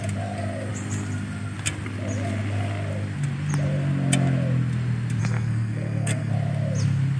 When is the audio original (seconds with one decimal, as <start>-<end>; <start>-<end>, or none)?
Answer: 0.0-5.2; 6.3-7.2